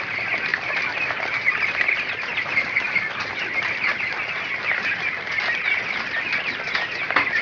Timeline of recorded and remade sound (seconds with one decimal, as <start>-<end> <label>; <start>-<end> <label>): 0.0-7.4 recorded